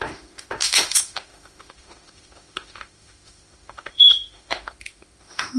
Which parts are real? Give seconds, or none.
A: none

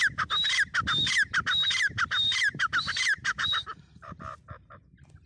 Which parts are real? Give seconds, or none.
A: 0.0-1.6; 4.8-5.3

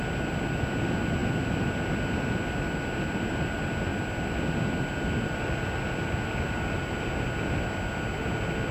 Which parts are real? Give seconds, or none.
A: 0.0-8.7

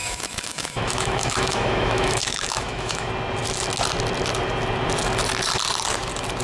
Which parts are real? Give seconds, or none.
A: 3.1-6.4

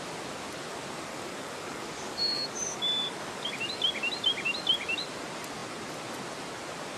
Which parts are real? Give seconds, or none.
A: 0.0-1.1; 3.5-7.0

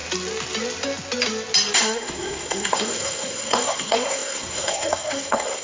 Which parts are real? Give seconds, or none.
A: 0.0-1.8

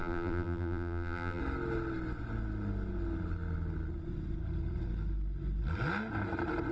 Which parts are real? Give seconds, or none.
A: 1.4-6.7